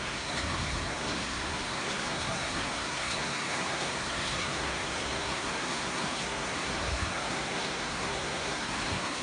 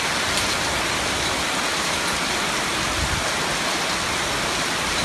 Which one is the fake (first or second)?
first